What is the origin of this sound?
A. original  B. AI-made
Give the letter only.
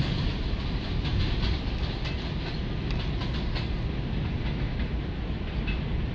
A